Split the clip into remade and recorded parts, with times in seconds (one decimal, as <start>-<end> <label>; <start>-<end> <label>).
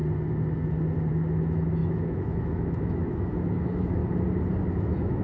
0.0-1.1 recorded; 1.1-4.0 remade; 4.0-4.7 recorded; 4.7-5.2 remade